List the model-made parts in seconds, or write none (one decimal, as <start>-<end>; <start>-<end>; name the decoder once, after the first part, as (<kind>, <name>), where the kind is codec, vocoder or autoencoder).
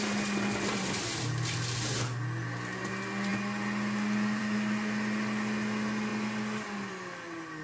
none